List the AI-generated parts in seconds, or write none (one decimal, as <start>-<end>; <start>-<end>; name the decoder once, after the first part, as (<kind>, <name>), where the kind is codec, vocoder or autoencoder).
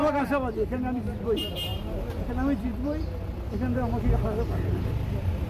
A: none